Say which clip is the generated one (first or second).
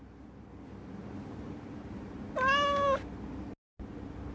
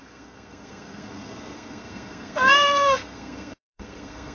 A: second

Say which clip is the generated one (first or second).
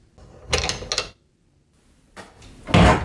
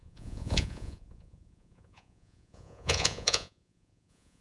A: second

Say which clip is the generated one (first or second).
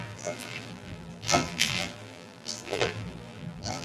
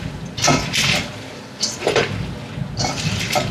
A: first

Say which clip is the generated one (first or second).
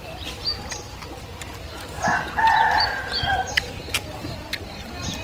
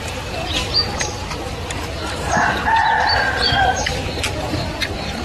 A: second